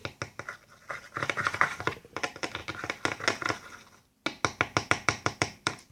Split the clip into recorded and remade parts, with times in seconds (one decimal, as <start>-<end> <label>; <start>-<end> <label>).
0.0-0.8 recorded; 0.8-2.6 remade; 2.6-4.9 recorded; 4.9-5.9 remade